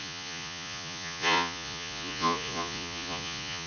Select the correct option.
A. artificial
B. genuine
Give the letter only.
A